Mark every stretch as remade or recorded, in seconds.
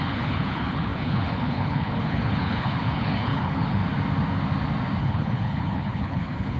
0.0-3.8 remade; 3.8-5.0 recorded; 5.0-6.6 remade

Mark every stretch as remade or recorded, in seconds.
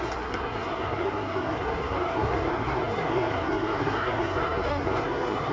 0.0-5.5 remade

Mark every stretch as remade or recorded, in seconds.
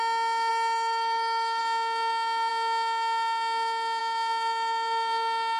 0.0-0.5 recorded; 0.5-1.6 remade; 1.6-5.6 recorded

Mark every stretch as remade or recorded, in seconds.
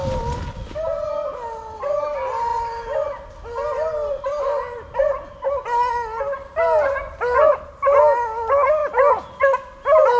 0.0-10.2 recorded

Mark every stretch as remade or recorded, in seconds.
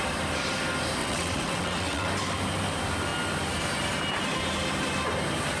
0.0-1.0 recorded; 1.0-2.1 remade; 2.1-5.6 recorded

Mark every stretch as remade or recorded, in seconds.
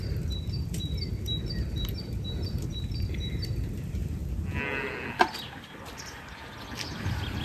0.0-7.4 recorded